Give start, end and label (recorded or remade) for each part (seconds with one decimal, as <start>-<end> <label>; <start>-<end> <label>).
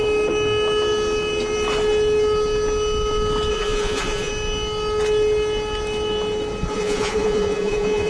0.0-3.5 recorded; 3.5-4.3 remade; 4.3-6.7 recorded; 6.7-8.1 remade